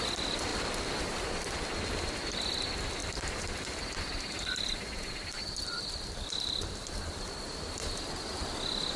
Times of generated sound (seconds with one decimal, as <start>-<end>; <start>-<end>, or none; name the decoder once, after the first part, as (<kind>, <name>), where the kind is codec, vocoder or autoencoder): 0.5-1.0 (vocoder, BigVGAN v2); 3.0-7.0